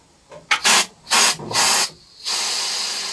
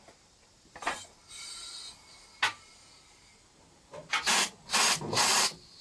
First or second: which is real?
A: first